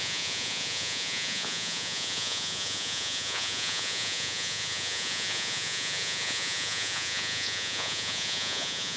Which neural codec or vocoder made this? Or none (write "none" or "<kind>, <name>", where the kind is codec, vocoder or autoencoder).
vocoder, Vocos